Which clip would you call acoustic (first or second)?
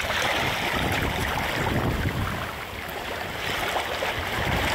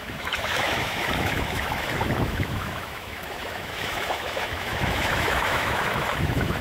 first